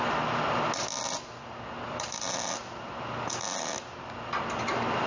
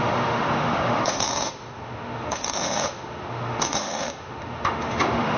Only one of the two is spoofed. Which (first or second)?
second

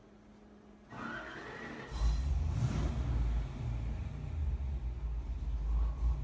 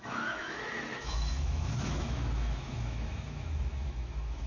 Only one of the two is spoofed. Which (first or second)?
second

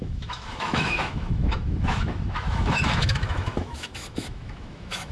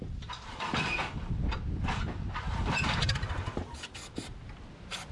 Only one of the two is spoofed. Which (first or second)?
first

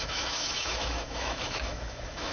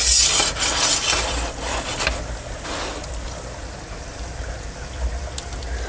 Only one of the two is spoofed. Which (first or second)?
first